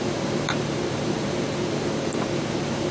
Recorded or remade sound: remade